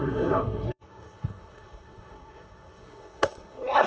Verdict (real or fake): fake